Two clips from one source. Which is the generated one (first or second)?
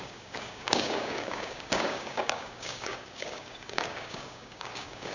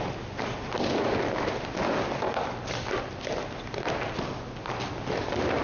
first